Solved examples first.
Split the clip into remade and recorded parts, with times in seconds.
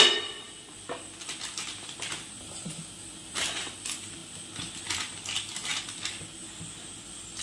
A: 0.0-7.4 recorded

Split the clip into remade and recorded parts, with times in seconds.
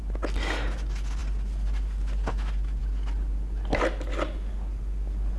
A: 0.0-5.4 recorded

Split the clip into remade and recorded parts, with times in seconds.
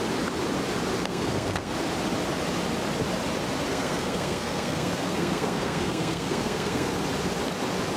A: 0.0-1.0 recorded; 1.0-1.7 remade; 1.7-3.7 recorded; 3.7-7.0 remade; 7.0-8.0 recorded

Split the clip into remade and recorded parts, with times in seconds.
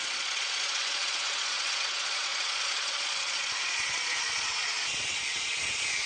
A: 0.0-6.1 remade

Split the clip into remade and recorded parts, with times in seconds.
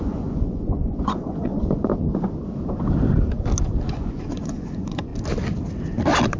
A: 0.0-1.9 remade; 1.9-3.9 recorded; 3.9-5.1 remade; 5.1-6.4 recorded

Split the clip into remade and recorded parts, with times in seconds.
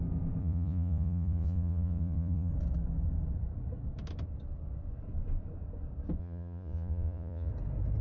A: 0.0-0.4 recorded; 0.4-2.5 remade; 2.5-6.2 recorded; 6.2-7.5 remade; 7.5-8.0 recorded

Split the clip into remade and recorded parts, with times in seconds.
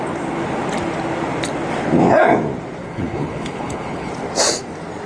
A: 0.0-2.8 recorded; 2.8-4.1 remade; 4.1-5.1 recorded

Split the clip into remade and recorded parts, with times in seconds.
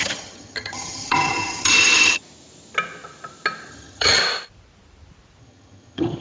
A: 0.0-2.2 remade; 2.2-3.7 recorded; 3.7-4.2 remade; 4.2-5.4 recorded; 5.4-6.2 remade